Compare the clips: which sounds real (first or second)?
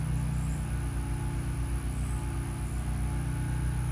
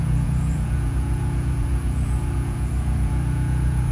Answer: first